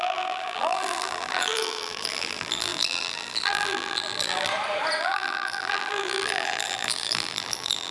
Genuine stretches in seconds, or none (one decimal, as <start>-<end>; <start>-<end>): 4.5-5.0